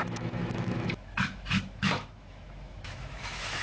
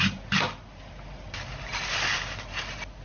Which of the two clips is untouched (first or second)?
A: second